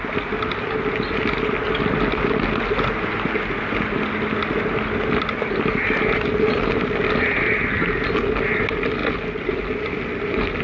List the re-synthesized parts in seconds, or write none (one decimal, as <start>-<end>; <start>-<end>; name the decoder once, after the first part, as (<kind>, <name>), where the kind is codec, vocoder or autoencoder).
none

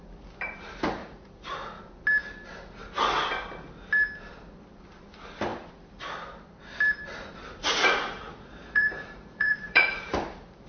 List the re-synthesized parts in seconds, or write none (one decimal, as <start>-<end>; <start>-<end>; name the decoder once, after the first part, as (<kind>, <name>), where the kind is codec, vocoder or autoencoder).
1.0-1.8 (vocoder, Vocos); 7.6-10.1